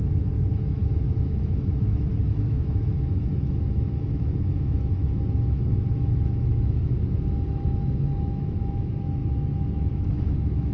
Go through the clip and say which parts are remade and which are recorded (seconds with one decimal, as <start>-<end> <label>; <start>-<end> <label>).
0.0-10.7 remade